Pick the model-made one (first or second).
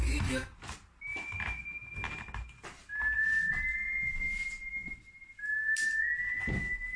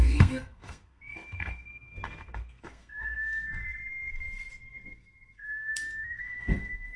second